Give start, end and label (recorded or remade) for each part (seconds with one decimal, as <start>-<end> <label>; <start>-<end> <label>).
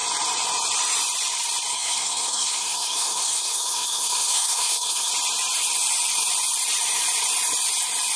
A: 0.0-1.7 recorded; 1.7-5.1 remade; 5.1-8.2 recorded